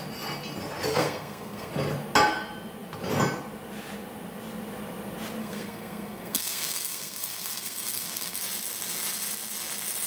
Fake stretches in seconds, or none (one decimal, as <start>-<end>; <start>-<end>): 0.9-1.7; 5.4-8.4

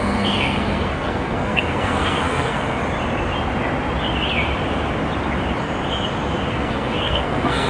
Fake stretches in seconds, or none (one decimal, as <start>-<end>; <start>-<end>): 0.0-2.8; 6.5-7.7

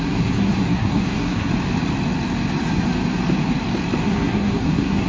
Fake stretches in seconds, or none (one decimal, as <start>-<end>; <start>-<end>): 0.0-1.5; 4.0-5.1